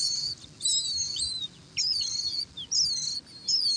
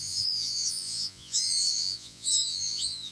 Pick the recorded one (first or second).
first